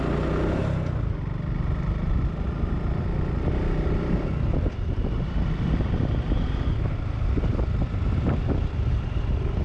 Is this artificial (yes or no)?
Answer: no